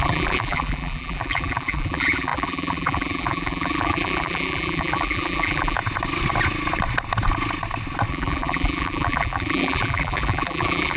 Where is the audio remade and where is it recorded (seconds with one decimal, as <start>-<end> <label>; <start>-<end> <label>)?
0.0-5.8 remade; 5.8-8.1 recorded; 8.1-11.0 remade